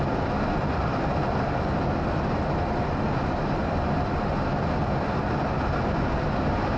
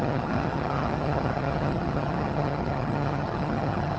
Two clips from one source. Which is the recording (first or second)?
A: first